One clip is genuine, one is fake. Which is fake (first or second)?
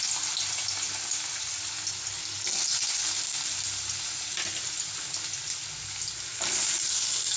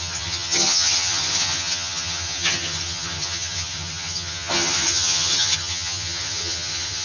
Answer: second